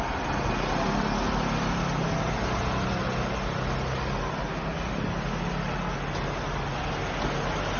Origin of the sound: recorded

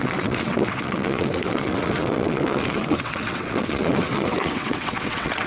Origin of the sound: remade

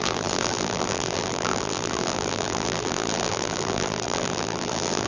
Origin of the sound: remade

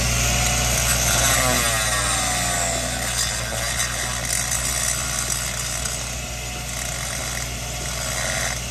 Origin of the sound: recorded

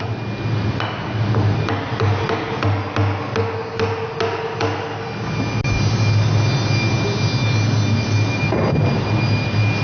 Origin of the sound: recorded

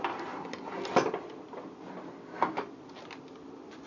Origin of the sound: recorded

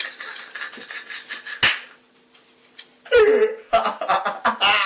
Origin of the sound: recorded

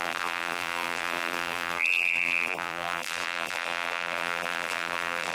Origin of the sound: remade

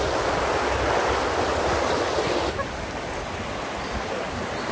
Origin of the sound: recorded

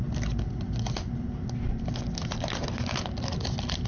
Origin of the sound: recorded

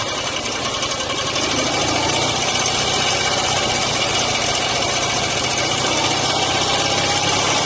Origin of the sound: recorded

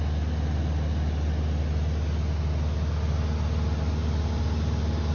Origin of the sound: recorded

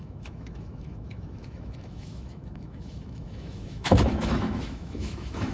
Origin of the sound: remade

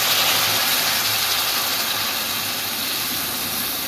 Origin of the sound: recorded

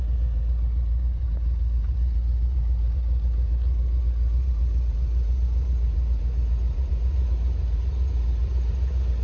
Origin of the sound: remade